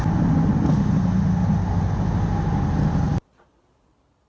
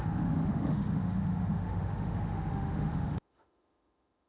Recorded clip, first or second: first